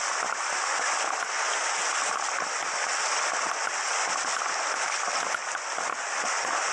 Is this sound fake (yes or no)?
no